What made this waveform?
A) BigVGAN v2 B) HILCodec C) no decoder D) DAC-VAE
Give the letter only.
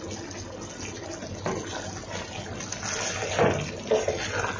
C